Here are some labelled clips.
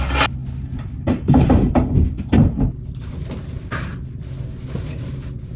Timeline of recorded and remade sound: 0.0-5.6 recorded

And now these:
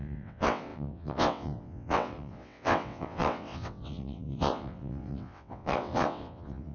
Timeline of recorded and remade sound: 0.0-6.7 remade

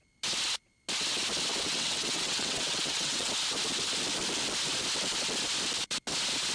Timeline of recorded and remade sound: 0.0-1.5 recorded; 1.5-3.3 remade; 3.3-6.5 recorded

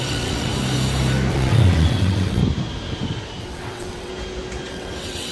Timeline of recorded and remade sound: 0.0-0.5 remade; 0.5-1.3 recorded; 1.3-2.4 remade; 2.4-3.4 recorded; 3.4-4.1 remade; 4.1-4.7 recorded; 4.7-5.3 remade

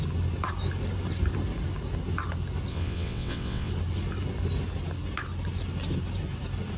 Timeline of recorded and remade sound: 0.0-2.7 recorded; 2.7-3.7 remade; 3.7-6.8 recorded

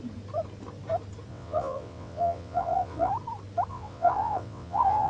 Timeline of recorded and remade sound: 0.0-1.3 recorded; 1.3-3.1 remade; 3.1-3.7 recorded; 3.7-5.1 remade

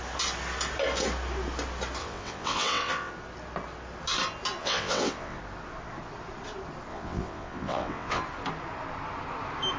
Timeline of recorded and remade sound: 0.0-2.0 recorded; 2.0-3.1 remade; 3.1-4.6 recorded; 4.6-5.4 remade; 5.4-6.9 recorded; 6.9-8.2 remade; 8.2-9.8 recorded

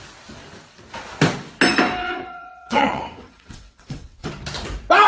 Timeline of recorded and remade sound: 0.0-2.0 recorded; 2.0-4.3 remade; 4.3-5.1 recorded